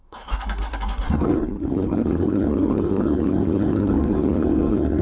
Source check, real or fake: fake